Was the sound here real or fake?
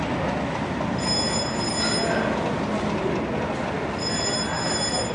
real